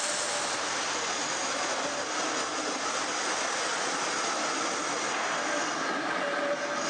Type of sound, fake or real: real